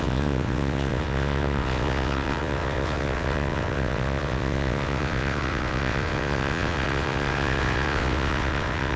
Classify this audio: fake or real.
fake